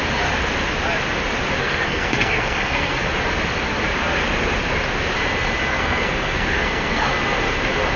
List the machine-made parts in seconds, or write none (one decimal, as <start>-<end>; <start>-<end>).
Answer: 1.6-3.1; 5.7-7.1